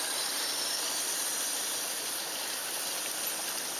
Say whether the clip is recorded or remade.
recorded